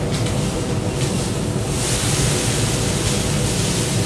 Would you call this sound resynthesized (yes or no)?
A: no